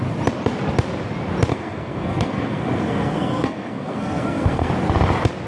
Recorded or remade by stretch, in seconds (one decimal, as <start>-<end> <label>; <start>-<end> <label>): 0.0-1.5 recorded; 1.5-4.7 remade; 4.7-5.5 recorded